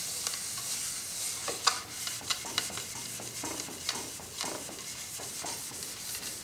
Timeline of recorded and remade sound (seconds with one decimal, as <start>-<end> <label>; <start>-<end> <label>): 0.0-6.4 recorded